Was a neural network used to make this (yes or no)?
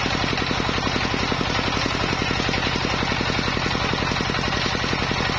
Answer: no